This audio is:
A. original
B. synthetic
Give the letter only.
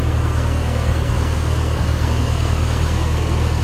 B